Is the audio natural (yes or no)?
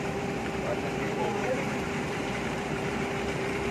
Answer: no